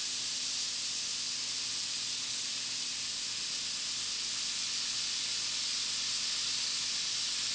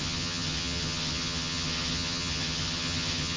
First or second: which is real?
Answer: first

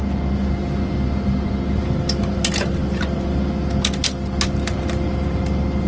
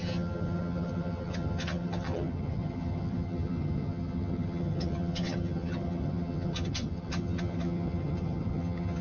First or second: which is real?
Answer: first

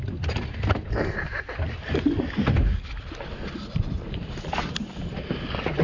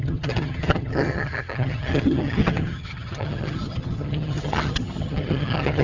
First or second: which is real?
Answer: first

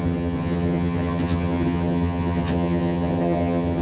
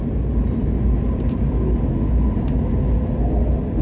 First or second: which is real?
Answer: second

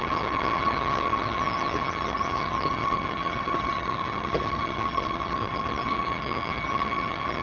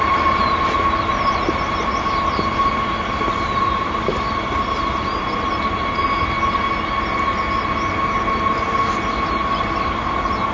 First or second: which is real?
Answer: second